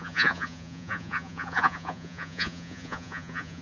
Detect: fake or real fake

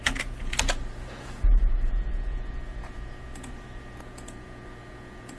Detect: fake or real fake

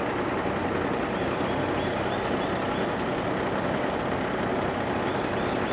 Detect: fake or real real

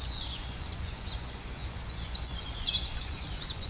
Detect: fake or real fake